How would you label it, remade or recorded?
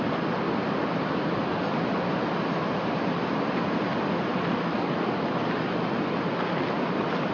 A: recorded